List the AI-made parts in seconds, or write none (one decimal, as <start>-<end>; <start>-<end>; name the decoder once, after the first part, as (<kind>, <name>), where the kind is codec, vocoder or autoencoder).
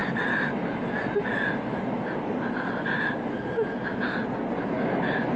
none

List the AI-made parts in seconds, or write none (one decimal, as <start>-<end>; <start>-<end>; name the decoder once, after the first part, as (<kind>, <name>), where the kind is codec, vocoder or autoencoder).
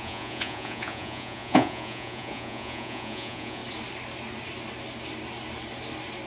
0.0-3.6 (vocoder, Vocos)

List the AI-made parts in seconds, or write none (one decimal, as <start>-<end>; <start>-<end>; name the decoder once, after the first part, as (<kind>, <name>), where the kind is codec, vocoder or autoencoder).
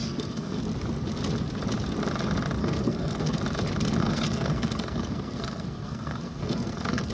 0.0-0.6 (codec, SNAC); 2.6-3.4; 4.0-7.1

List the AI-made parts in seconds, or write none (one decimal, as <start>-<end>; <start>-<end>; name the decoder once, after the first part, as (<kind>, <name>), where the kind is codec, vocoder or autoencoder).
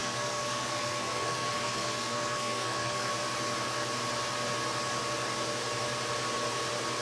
0.0-3.1 (codec, SNAC)